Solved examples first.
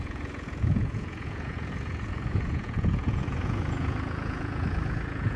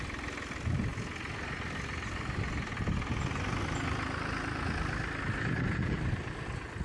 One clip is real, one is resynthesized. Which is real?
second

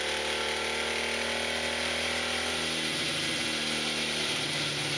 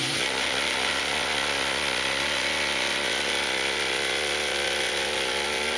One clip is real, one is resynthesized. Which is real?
first